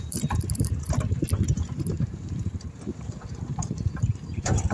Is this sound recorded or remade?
remade